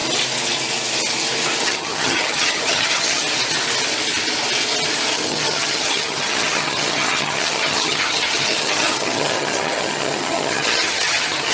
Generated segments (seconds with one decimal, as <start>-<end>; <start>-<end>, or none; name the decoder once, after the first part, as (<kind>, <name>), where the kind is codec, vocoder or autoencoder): 1.6-3.2 (vocoder, HiFi-GAN); 5.1-11.5